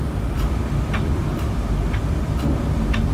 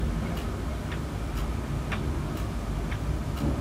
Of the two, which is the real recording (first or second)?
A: second